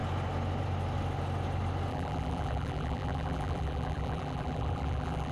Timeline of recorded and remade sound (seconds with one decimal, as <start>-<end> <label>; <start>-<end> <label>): 0.0-1.9 recorded; 1.9-5.3 remade